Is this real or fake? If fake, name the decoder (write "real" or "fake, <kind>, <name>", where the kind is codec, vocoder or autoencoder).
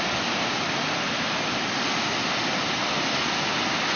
real